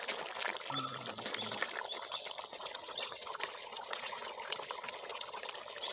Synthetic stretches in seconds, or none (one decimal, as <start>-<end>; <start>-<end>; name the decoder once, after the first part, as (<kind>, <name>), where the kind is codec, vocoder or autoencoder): 2.5-5.5 (vocoder, Vocos)